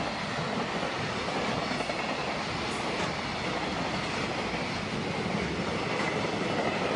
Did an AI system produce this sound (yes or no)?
no